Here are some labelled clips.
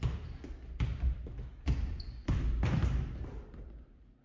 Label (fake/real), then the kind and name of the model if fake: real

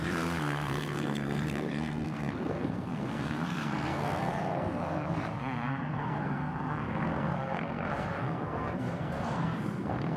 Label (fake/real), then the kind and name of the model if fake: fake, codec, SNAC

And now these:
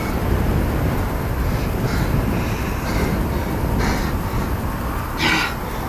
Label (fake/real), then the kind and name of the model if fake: real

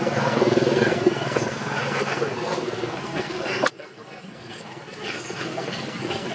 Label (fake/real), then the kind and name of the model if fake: fake, codec, SNAC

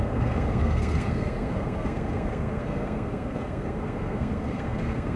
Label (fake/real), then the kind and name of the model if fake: fake, codec, SNAC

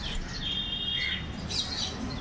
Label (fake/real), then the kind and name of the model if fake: real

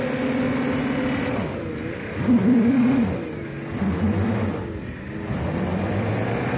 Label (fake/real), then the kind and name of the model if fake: real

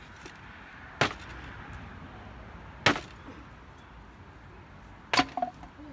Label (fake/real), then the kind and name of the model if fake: real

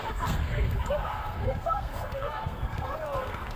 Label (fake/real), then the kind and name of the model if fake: fake, codec, SNAC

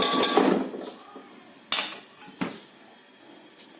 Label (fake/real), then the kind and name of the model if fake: real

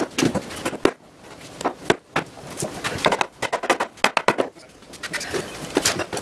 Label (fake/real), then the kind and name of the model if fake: real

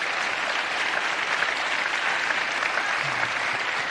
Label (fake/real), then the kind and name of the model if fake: real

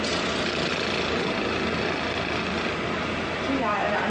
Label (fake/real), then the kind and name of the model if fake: real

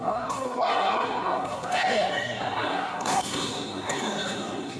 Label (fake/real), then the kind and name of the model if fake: fake, codec, SNAC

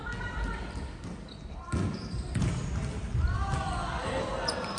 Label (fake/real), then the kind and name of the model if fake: real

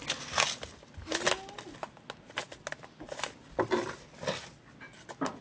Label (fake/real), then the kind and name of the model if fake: real